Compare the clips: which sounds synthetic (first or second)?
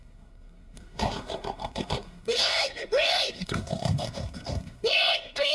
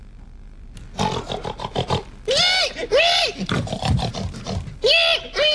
first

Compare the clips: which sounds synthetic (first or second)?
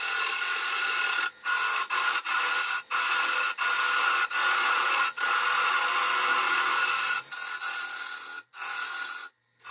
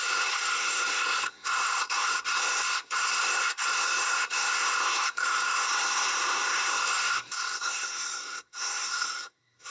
second